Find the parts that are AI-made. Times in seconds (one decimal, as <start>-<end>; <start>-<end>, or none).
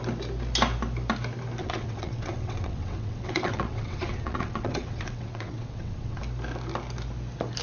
1.6-6.2